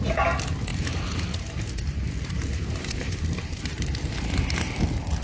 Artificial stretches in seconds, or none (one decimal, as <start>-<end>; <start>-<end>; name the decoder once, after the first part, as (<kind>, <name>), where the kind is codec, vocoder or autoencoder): 0.7-3.8 (vocoder, BigVGAN v2)